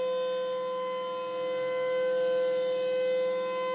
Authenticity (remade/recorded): recorded